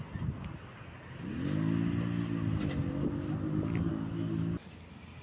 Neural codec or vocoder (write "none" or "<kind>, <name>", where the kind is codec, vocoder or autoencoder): none